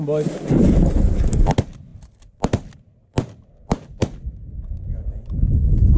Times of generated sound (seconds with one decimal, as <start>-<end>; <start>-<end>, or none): none